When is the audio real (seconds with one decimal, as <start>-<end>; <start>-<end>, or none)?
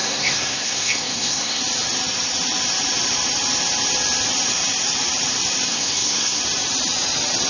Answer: 1.6-5.7; 6.4-7.5